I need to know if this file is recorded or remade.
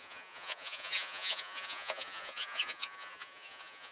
remade